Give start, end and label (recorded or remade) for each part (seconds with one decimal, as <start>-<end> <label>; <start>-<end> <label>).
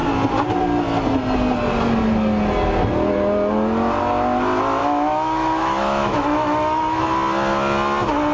0.0-4.8 recorded; 4.8-7.0 remade; 7.0-8.3 recorded